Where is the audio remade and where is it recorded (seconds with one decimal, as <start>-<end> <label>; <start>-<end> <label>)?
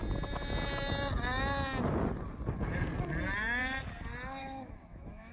0.0-4.4 recorded; 4.4-5.3 remade